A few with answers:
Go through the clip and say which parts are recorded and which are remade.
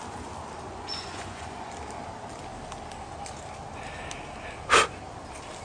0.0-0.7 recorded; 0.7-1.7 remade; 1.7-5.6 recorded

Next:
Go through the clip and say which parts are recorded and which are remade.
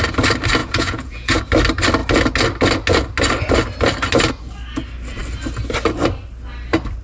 0.0-0.6 recorded; 0.6-1.4 remade; 1.4-7.0 recorded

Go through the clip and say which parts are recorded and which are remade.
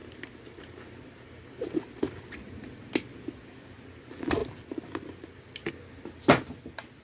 0.0-7.0 recorded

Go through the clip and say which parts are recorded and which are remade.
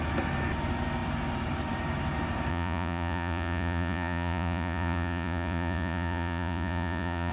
0.0-2.5 recorded; 2.5-7.3 remade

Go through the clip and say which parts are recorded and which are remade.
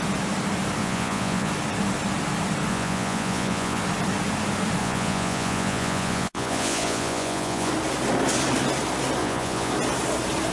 0.0-0.8 recorded; 0.8-1.5 remade; 1.5-2.7 recorded; 2.7-3.8 remade; 3.8-4.8 recorded; 4.8-7.7 remade; 7.7-9.2 recorded; 9.2-9.7 remade; 9.7-10.5 recorded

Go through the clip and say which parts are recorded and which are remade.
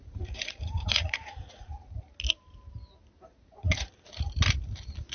0.0-2.0 remade; 2.0-3.3 recorded; 3.3-3.9 remade; 3.9-5.1 recorded